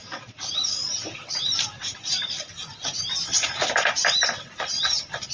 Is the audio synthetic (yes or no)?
no